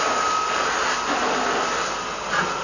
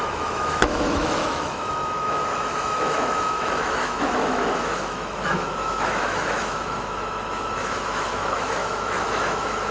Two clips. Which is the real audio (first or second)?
first